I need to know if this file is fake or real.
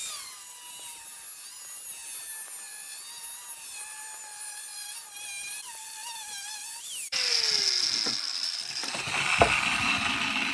real